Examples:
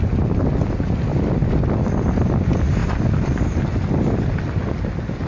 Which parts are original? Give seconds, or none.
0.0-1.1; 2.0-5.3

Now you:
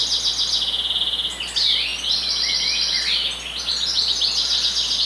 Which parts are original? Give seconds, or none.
0.0-5.1

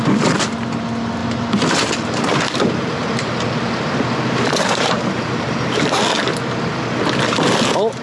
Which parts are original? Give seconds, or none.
0.0-1.2; 6.0-8.0

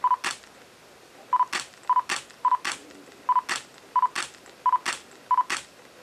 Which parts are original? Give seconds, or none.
0.0-6.0

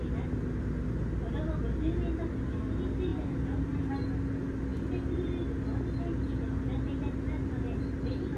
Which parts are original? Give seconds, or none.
0.0-3.1; 3.9-8.4

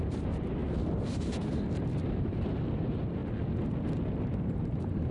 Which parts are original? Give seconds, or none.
3.2-4.4

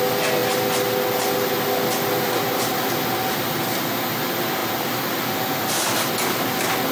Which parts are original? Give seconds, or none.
0.0-4.6; 6.1-6.9